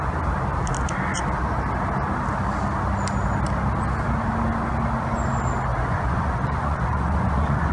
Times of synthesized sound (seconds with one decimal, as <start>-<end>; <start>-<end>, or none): 5.7-7.7